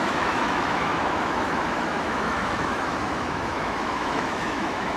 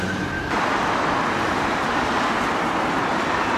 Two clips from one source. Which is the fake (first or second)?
first